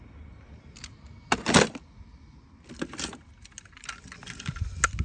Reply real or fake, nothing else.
real